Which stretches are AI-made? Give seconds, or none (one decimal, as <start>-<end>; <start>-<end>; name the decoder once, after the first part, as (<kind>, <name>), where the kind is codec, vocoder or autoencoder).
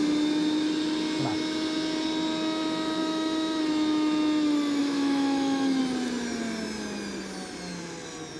3.0-3.6 (autoencoder, DAC-VAE); 4.8-5.8